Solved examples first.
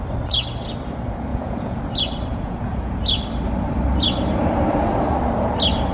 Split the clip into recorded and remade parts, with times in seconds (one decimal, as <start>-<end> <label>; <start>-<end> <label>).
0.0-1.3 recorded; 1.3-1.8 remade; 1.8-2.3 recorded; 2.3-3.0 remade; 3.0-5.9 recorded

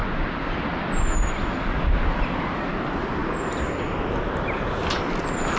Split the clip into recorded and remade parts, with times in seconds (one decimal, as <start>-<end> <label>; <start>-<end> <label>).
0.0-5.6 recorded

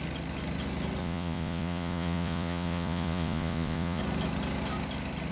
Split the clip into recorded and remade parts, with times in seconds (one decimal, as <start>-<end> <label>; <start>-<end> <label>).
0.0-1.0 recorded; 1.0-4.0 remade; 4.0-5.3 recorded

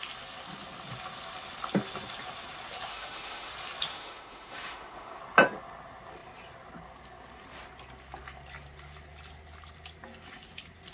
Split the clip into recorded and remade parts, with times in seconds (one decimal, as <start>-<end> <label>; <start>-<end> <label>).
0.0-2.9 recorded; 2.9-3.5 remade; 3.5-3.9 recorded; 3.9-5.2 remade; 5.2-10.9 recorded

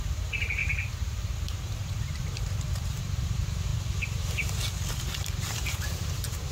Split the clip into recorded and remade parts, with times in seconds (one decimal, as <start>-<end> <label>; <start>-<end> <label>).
0.0-3.7 remade; 3.7-5.0 recorded; 5.0-6.5 remade